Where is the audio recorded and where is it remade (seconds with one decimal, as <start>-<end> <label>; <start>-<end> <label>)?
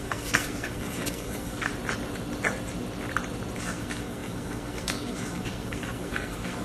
0.0-1.7 remade; 1.7-3.6 recorded; 3.6-6.6 remade